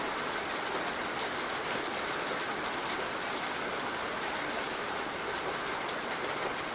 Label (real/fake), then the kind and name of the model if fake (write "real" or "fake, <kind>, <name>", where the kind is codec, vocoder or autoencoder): real